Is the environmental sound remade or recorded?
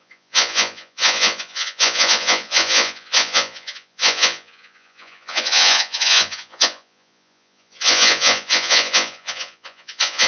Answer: remade